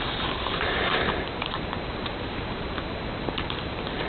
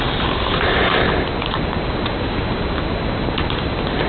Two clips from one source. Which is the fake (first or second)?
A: first